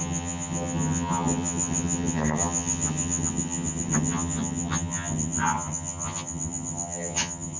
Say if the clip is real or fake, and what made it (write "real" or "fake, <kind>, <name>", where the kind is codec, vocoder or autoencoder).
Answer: fake, vocoder, HiFi-GAN